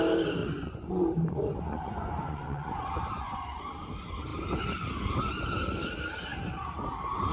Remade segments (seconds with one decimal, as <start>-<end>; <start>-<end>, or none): 0.4-3.6